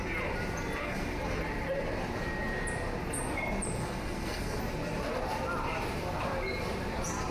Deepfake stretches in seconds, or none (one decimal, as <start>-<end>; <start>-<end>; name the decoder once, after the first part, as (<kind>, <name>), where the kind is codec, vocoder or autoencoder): 0.8-1.4 (codec, SNAC); 3.8-4.6